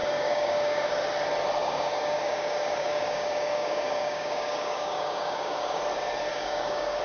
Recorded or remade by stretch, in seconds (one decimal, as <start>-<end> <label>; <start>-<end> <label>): 0.0-0.9 remade; 0.9-1.6 recorded; 1.6-5.8 remade; 5.8-6.3 recorded; 6.3-7.0 remade